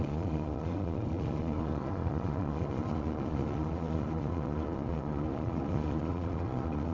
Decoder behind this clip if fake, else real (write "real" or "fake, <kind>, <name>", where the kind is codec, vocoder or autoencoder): fake, vocoder, Vocos